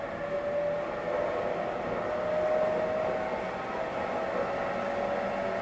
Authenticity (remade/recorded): recorded